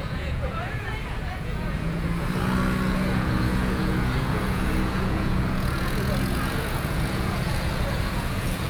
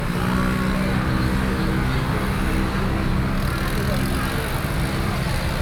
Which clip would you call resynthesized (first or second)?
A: first